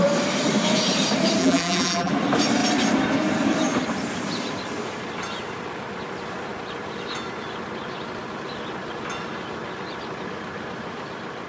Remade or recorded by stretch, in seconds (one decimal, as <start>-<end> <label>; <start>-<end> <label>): 0.0-1.4 recorded; 1.4-2.1 remade; 2.1-11.5 recorded